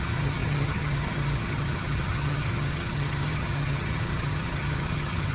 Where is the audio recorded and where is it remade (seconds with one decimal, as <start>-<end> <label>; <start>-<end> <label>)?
0.0-5.3 remade